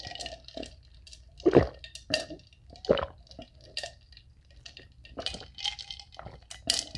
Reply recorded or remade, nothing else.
recorded